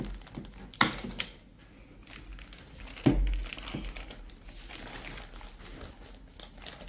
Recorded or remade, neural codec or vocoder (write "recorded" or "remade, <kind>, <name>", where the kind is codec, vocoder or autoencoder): recorded